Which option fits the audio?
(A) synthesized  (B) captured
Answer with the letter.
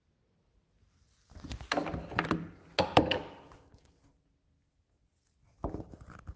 B